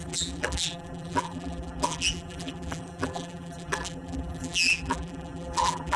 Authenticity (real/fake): fake